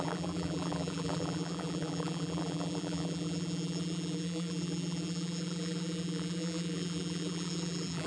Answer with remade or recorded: remade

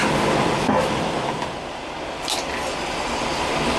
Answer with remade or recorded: recorded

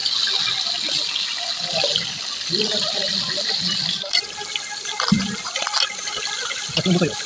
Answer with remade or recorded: recorded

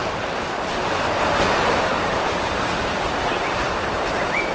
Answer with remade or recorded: remade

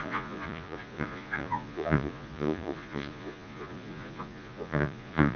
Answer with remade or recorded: remade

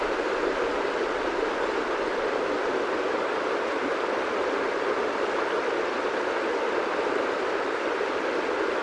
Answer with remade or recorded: recorded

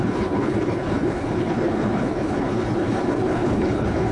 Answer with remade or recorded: remade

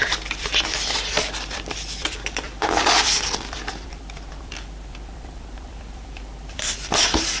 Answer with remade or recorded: remade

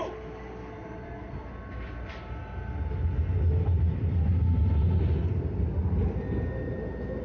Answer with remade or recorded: recorded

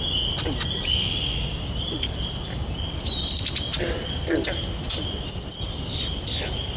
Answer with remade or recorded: recorded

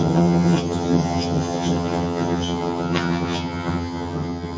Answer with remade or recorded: remade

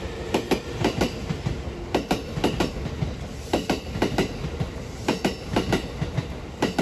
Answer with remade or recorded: recorded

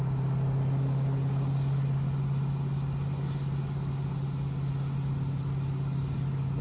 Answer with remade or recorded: recorded